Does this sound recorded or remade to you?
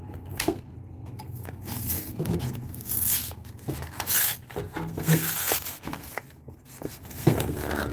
remade